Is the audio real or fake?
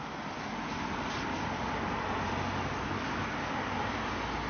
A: real